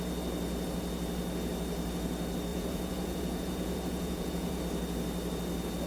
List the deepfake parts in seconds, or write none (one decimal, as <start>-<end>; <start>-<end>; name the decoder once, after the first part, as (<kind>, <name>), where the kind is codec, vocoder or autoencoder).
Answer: 2.5-4.6 (vocoder, Vocos)